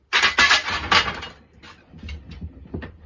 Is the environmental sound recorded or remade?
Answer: recorded